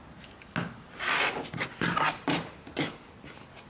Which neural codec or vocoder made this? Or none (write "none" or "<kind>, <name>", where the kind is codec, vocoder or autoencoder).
none